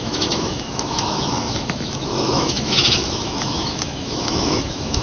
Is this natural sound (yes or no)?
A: no